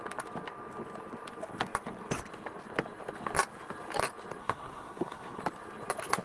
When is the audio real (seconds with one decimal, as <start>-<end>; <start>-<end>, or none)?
0.0-4.4; 5.4-6.2